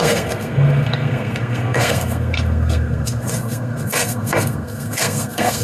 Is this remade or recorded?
remade